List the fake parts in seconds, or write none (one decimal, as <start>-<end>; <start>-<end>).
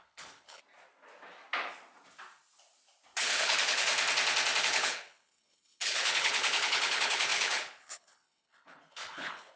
0.0-0.6; 3.2-3.9; 4.6-9.6